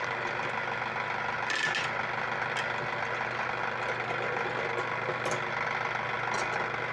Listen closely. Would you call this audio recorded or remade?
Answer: recorded